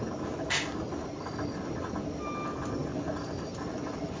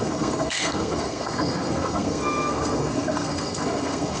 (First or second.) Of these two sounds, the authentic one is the first